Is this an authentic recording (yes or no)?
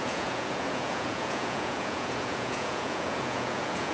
no